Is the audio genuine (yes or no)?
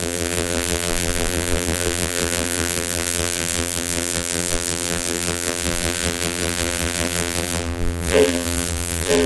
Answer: no